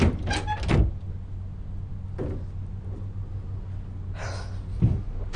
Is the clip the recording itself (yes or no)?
yes